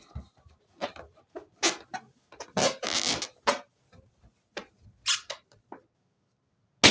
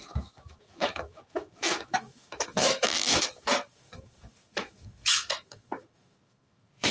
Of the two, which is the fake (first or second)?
second